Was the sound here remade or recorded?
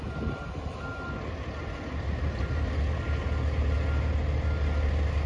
recorded